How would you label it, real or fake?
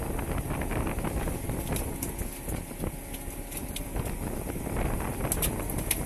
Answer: real